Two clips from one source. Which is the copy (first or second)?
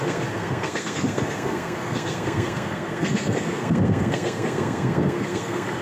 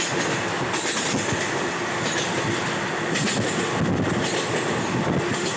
first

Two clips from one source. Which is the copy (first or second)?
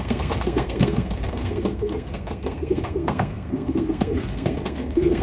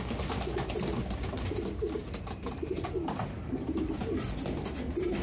first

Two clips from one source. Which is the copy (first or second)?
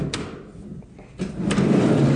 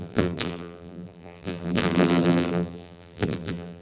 second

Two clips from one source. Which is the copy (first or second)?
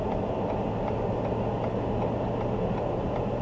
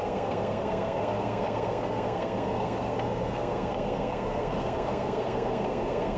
second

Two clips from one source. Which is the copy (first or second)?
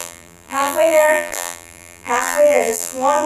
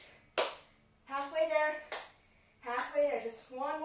first